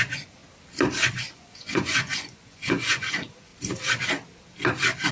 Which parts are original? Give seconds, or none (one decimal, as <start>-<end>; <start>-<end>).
0.4-1.3; 3.5-5.1